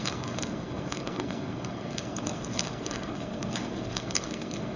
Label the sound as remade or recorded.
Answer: remade